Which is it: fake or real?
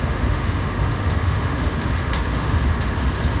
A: fake